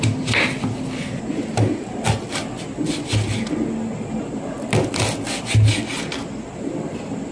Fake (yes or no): no